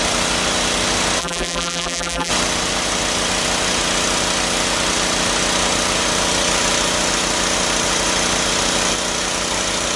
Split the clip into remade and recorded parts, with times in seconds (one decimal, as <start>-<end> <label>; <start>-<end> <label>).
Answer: 0.0-1.2 recorded; 1.2-2.3 remade; 2.3-10.0 recorded